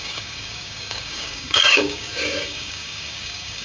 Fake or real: fake